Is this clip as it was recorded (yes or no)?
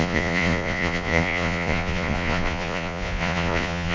no